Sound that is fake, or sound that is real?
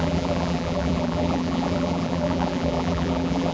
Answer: fake